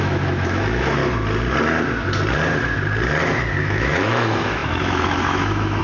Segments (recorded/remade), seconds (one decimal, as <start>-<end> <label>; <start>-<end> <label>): 0.0-1.0 remade; 1.0-3.6 recorded; 3.6-5.8 remade